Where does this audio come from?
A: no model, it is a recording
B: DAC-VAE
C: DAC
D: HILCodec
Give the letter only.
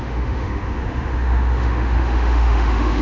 B